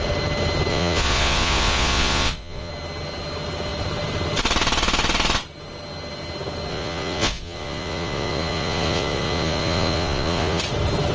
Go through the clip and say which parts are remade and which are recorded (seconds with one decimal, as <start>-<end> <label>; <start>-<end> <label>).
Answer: 0.0-0.7 recorded; 0.7-2.7 remade; 2.7-6.7 recorded; 6.7-10.6 remade; 10.6-11.1 recorded